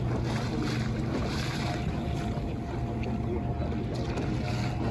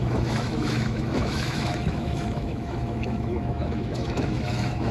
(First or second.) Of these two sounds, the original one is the first